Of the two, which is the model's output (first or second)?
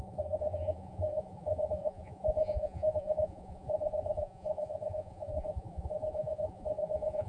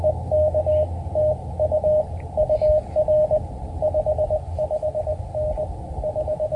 first